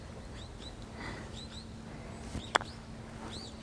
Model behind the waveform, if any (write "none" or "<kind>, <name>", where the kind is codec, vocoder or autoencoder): none